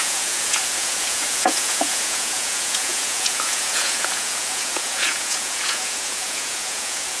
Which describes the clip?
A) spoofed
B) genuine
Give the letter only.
A